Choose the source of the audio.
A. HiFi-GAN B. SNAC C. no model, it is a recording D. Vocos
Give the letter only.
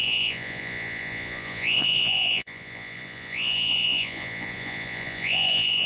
D